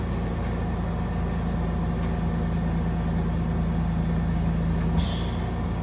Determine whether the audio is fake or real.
real